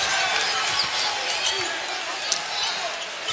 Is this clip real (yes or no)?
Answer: yes